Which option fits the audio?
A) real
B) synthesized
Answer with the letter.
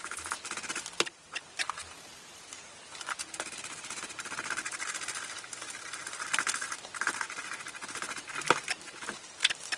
A